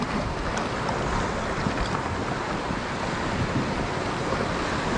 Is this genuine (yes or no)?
yes